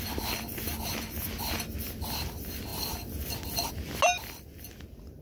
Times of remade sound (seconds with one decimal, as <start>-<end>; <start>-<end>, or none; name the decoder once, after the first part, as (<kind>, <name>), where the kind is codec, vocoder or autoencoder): none